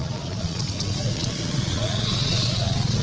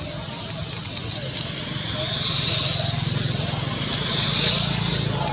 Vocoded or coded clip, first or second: first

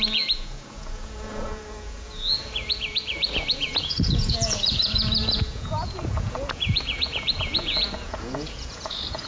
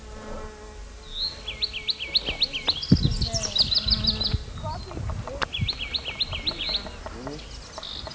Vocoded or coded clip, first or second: first